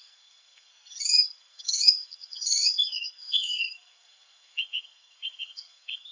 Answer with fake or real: fake